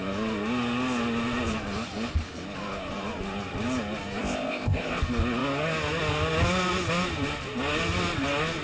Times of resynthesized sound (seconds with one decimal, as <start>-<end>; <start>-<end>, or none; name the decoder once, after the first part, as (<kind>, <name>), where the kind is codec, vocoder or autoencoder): 4.2-5.0 (codec, ZipCodec)